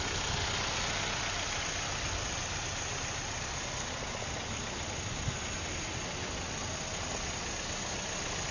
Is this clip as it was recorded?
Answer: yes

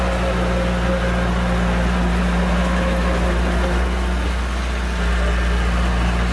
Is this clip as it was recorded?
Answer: yes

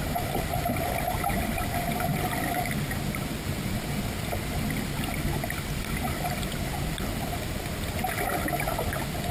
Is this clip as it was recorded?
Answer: yes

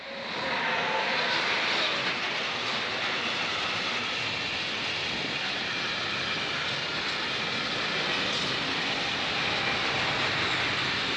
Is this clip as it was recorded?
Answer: yes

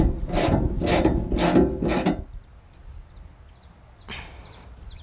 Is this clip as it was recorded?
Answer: yes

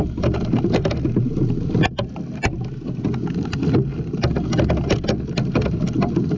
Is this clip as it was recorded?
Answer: yes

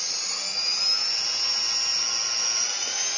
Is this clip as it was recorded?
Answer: yes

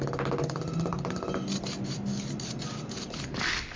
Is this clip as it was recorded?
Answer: yes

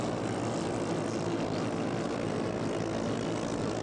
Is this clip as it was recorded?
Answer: yes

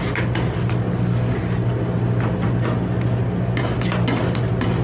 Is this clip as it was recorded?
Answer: yes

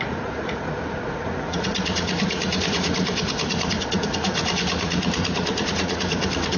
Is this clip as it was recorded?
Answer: no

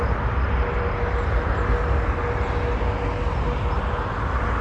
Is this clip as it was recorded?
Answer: yes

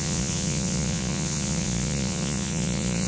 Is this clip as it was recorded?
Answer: no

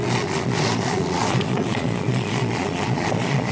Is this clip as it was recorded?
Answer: no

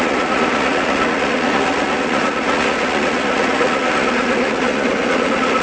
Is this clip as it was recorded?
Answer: no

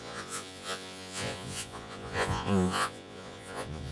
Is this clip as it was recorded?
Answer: no